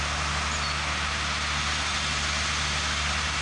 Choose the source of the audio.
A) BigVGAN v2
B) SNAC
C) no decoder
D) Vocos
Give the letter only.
C